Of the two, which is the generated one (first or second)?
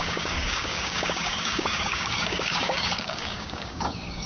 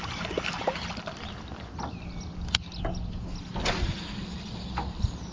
first